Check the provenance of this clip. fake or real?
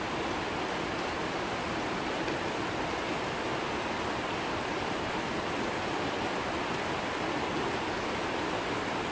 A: real